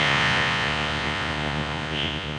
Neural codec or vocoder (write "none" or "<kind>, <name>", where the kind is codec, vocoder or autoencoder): vocoder, Vocos